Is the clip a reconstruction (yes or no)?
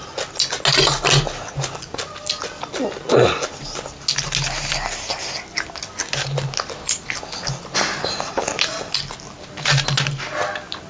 no